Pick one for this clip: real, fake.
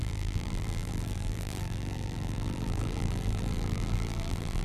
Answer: fake